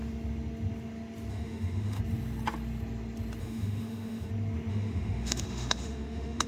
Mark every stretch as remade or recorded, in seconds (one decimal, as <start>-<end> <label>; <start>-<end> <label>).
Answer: 0.0-1.3 recorded; 1.3-2.0 remade; 2.0-3.4 recorded; 3.4-4.3 remade; 4.3-4.7 recorded; 4.7-6.5 remade